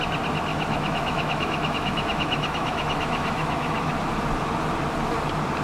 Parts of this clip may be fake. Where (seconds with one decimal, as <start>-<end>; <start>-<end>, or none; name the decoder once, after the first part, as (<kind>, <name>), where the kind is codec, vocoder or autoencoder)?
0.5-3.9 (autoencoder, DAC-VAE)

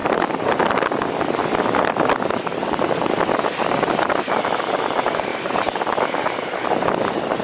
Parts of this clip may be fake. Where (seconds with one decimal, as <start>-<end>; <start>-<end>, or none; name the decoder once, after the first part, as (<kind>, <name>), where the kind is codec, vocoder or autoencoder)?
none

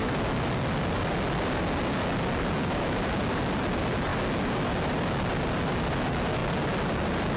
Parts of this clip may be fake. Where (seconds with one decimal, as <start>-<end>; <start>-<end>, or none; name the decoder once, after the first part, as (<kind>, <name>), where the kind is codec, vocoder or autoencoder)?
none